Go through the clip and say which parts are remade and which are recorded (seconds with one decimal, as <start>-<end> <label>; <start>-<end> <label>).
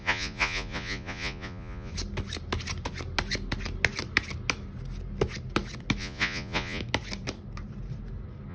0.0-1.9 remade; 1.9-6.0 recorded; 6.0-6.8 remade; 6.8-8.5 recorded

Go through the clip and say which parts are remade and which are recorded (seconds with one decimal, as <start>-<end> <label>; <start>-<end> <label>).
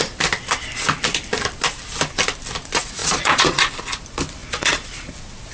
0.0-3.0 recorded; 3.0-3.7 remade; 3.7-4.4 recorded; 4.4-5.1 remade; 5.1-5.5 recorded